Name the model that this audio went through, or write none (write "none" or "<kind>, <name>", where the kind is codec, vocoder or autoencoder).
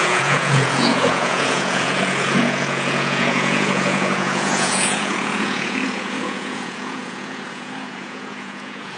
vocoder, Vocos